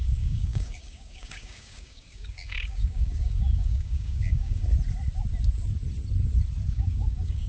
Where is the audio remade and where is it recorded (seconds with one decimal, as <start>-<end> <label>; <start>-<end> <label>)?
0.0-4.7 remade; 4.7-6.7 recorded; 6.7-7.5 remade